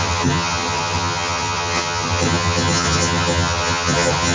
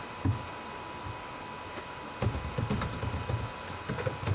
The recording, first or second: second